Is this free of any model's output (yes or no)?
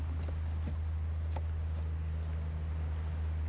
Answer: yes